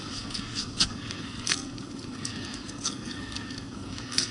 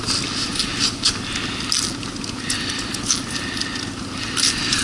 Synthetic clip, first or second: first